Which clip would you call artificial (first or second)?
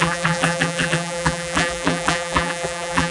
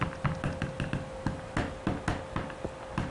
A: first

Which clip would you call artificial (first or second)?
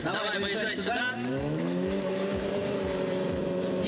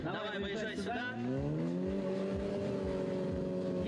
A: first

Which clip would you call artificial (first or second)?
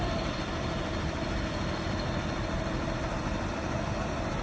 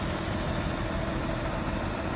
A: first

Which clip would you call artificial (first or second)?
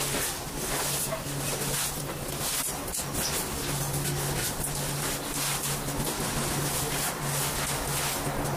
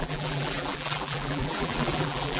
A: second